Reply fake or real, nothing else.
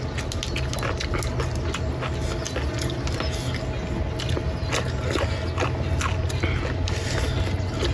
real